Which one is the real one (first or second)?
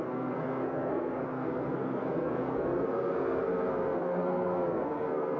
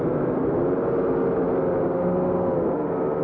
second